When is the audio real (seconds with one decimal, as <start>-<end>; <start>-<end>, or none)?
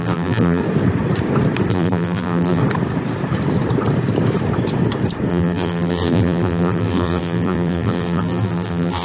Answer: 0.6-1.7; 2.6-5.3